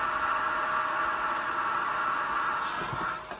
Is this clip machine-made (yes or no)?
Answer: no